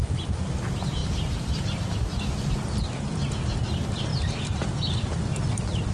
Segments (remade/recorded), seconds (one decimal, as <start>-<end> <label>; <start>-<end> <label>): 0.0-5.9 recorded